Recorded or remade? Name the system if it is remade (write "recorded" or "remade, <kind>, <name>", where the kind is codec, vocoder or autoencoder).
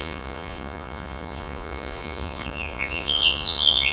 remade, vocoder, Vocos